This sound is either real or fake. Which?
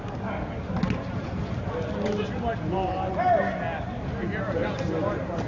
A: real